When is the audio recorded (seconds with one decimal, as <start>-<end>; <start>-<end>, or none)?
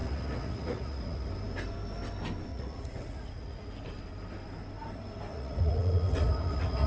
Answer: 1.3-2.5; 3.7-5.3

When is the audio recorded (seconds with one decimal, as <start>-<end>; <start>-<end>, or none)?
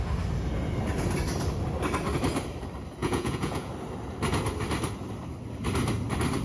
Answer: 0.0-3.0; 3.7-6.4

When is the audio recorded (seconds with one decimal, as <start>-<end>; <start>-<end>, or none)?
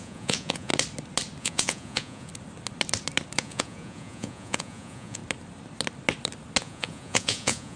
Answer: 0.7-1.4; 2.3-3.4; 5.2-6.6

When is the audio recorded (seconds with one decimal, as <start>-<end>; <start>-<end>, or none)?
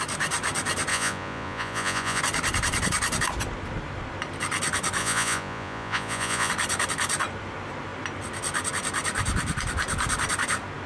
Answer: 0.0-0.9; 2.2-5.0; 6.5-10.9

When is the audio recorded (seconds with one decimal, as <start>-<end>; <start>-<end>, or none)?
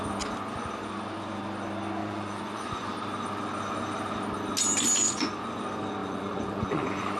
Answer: 0.0-2.0; 2.9-5.0; 5.6-6.0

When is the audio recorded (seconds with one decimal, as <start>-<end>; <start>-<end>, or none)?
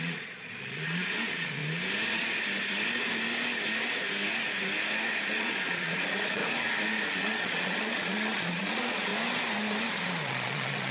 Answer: 1.6-5.3; 6.4-7.2; 9.1-9.9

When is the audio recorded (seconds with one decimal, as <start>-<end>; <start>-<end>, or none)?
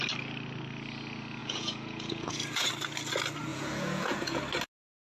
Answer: 0.0-1.4; 2.7-3.5; 4.4-5.0